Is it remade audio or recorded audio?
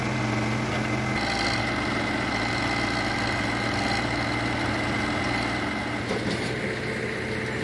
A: recorded